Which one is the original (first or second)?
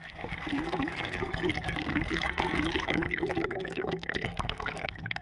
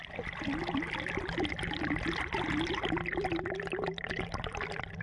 second